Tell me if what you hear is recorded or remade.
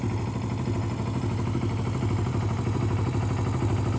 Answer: recorded